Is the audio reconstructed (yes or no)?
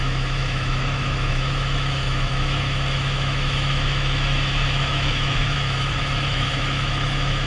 yes